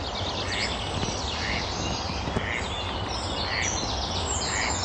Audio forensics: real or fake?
real